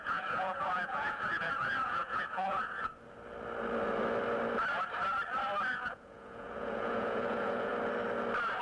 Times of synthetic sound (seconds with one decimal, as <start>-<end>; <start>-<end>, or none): 0.0-2.9; 5.7-7.7